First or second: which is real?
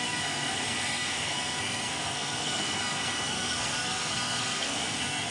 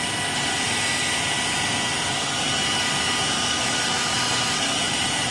second